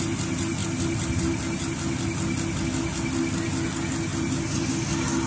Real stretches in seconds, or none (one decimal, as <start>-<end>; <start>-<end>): 0.0-4.1; 4.7-5.3